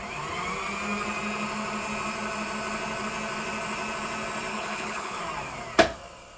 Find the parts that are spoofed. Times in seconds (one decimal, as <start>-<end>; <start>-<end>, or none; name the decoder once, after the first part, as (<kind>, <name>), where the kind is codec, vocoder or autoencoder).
4.5-5.2 (codec, HILCodec)